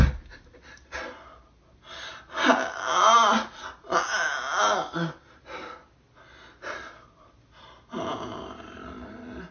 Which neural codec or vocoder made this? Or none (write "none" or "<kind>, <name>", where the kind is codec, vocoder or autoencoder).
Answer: none